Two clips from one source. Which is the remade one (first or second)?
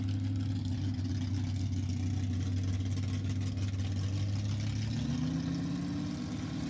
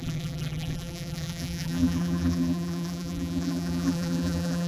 second